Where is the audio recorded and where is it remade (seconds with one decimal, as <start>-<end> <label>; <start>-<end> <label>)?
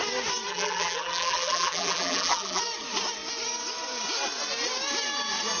0.0-0.5 recorded; 0.5-2.6 remade; 2.6-5.6 recorded